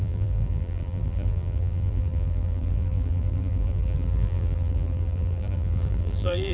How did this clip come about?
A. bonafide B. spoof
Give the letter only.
B